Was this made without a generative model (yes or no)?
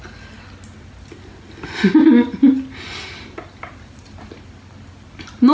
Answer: yes